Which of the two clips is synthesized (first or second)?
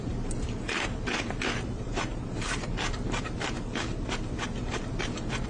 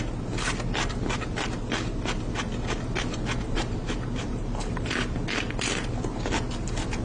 first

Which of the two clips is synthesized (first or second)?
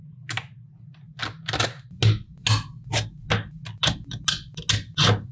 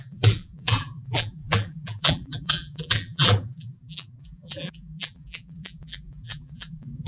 second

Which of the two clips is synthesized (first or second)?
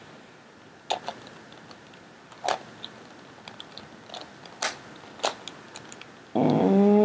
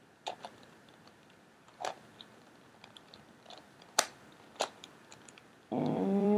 second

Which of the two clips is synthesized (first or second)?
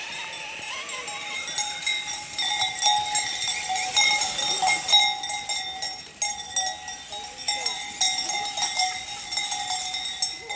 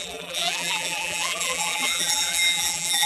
second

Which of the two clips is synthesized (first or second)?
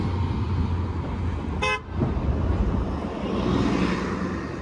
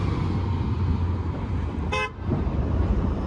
second